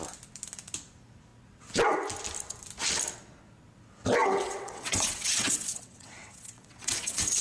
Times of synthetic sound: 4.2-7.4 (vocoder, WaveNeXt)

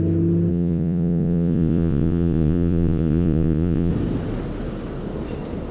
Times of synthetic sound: 0.5-3.9 (vocoder, Vocos)

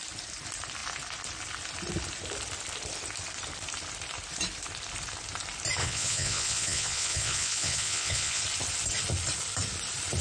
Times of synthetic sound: 5.8-8.4 (vocoder, WaveNeXt)

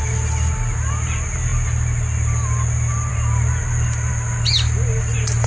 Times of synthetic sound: none